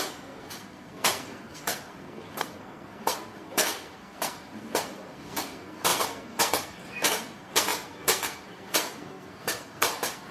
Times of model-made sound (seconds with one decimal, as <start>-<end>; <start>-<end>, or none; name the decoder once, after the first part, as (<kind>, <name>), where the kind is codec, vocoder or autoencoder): 0.0-10.3 (codec, SNAC)